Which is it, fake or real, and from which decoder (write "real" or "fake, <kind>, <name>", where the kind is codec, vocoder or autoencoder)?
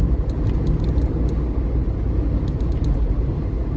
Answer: real